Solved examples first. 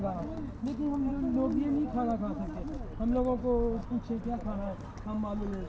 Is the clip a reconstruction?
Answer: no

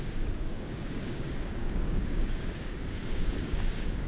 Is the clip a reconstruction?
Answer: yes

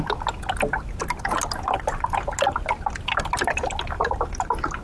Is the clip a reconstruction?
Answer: no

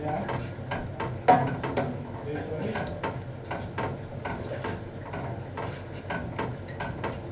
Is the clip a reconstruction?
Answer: no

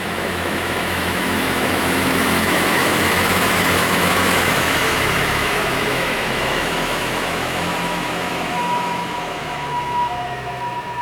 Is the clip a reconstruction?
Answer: yes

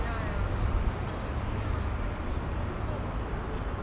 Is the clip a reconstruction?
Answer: no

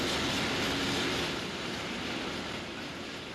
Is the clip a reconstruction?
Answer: no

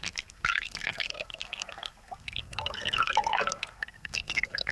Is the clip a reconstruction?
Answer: yes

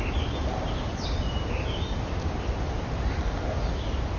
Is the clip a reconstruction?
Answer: no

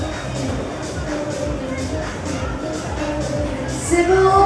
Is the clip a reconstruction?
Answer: no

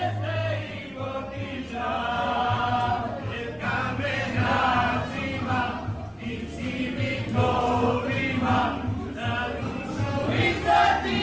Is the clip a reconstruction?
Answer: no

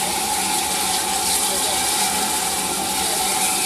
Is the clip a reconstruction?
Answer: no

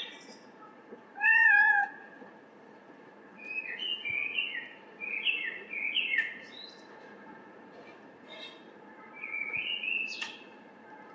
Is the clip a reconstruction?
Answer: yes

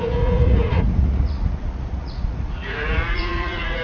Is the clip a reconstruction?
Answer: yes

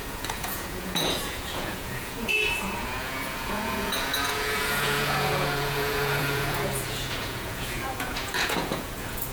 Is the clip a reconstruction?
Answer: yes